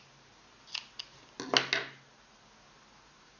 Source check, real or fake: real